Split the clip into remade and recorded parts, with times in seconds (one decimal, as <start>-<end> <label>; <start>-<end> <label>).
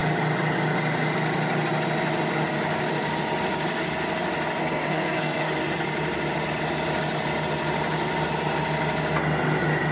0.0-4.6 recorded; 4.6-5.5 remade; 5.5-9.9 recorded